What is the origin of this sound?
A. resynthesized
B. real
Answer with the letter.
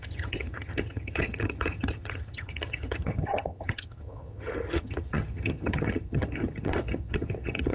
A